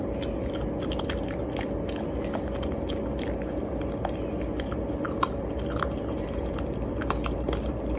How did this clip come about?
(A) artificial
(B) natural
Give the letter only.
B